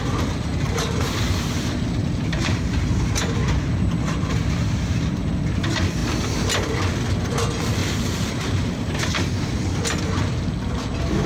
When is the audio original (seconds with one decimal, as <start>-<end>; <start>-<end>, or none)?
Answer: 0.0-0.5; 5.3-7.8; 8.9-11.3